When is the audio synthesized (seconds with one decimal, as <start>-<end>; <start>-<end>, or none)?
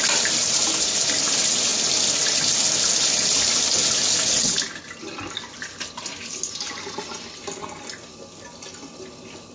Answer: none